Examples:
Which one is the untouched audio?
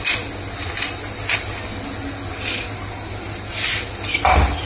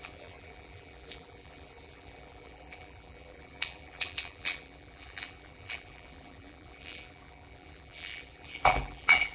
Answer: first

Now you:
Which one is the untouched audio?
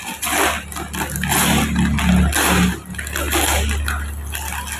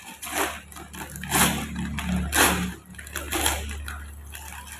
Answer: first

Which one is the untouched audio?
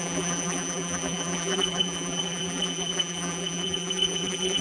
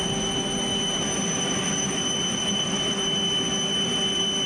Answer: second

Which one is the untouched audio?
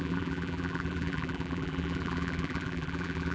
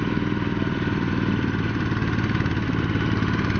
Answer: second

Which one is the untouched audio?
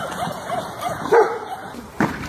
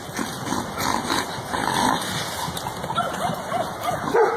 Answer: second